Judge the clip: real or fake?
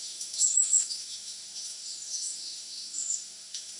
fake